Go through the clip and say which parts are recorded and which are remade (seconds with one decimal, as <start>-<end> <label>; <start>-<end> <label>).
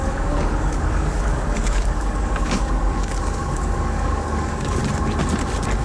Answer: 0.0-4.8 remade; 4.8-5.8 recorded